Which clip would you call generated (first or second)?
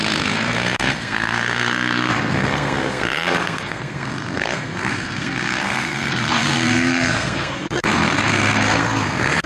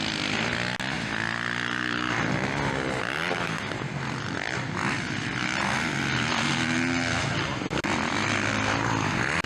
first